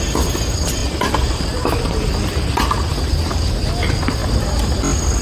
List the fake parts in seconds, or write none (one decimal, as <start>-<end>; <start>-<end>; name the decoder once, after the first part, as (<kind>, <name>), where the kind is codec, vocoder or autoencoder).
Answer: none